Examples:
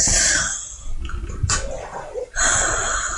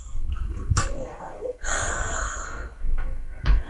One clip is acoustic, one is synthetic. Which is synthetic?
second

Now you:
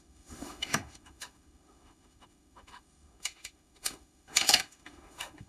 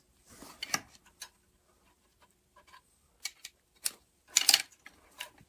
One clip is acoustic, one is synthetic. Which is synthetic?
first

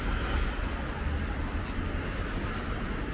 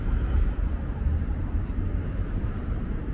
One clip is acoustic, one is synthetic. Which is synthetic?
second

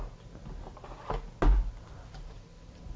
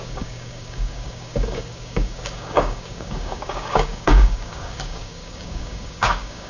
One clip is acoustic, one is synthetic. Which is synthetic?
second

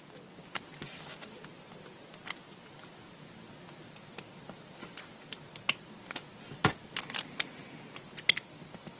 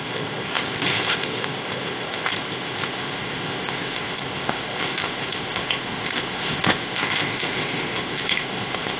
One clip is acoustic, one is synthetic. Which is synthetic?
second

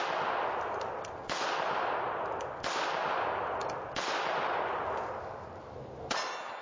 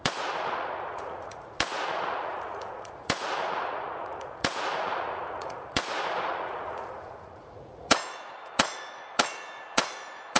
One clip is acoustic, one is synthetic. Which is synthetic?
second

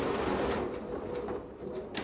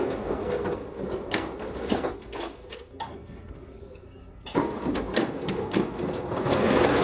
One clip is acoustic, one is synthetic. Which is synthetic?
second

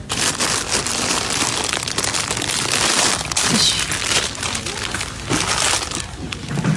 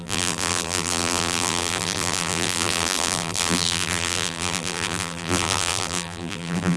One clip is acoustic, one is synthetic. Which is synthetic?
second